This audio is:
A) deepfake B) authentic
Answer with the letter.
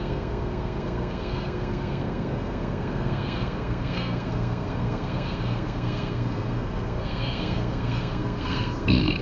A